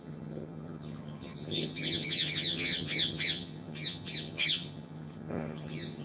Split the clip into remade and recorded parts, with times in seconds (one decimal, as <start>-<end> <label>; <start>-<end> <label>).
0.0-6.0 remade